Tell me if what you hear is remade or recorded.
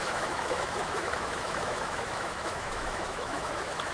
remade